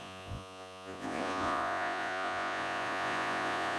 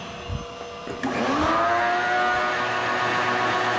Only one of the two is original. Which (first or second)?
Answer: second